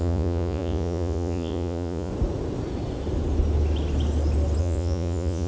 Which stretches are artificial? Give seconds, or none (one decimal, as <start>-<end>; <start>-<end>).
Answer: 0.0-2.1; 4.6-5.5